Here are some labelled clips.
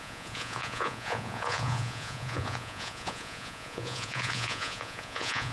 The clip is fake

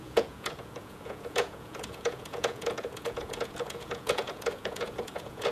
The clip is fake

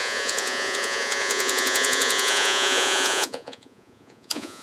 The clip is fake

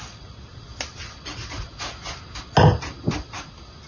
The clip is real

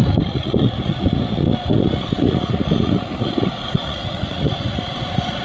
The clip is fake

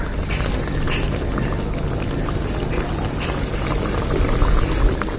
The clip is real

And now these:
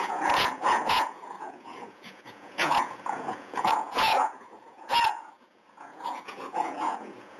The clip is fake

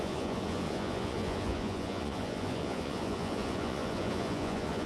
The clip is fake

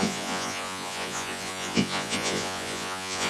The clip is fake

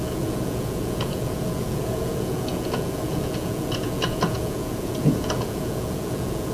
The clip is fake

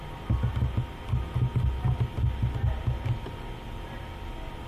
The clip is real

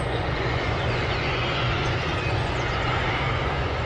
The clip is fake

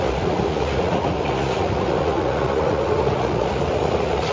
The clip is fake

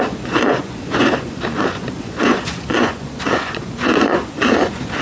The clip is fake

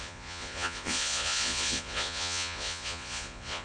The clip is fake